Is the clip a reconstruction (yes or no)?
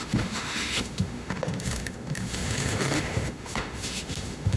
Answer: yes